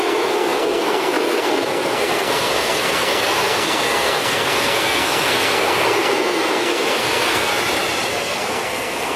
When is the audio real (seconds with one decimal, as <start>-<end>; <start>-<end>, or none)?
7.5-8.1